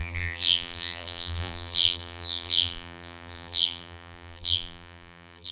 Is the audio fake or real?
fake